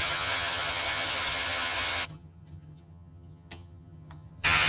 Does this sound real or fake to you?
fake